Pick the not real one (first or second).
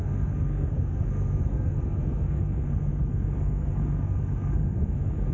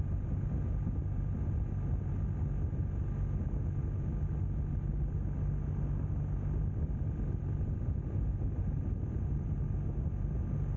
first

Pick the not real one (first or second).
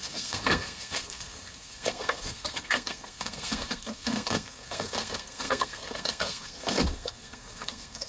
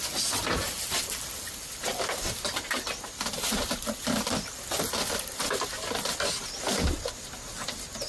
first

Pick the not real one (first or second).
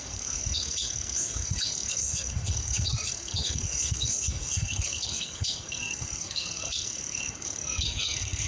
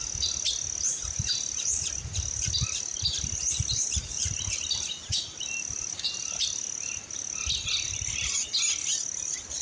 first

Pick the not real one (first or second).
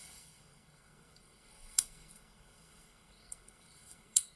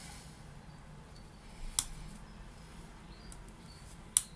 first